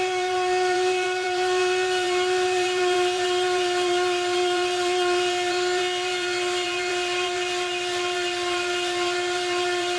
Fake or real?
fake